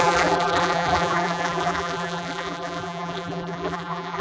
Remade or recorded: remade